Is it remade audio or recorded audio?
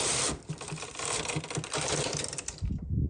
recorded